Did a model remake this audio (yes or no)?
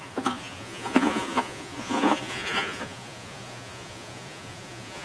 yes